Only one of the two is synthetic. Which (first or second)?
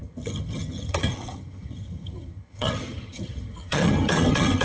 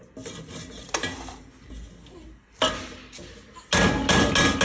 first